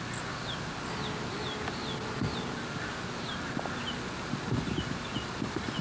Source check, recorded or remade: recorded